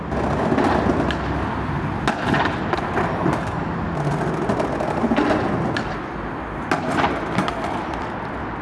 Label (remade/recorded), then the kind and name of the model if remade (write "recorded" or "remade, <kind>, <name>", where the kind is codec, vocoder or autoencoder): recorded